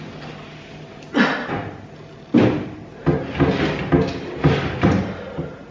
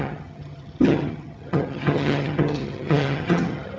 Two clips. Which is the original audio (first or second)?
first